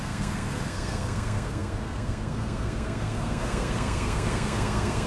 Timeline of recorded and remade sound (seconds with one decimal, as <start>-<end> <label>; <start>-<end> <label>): 0.0-5.1 remade